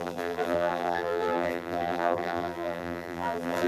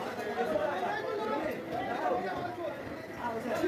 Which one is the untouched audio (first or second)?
second